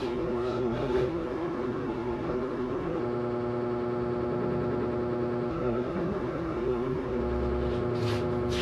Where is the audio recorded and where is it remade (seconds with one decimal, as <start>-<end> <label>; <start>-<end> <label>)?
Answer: 0.0-3.0 remade; 3.0-5.5 recorded; 5.5-7.2 remade; 7.2-8.6 recorded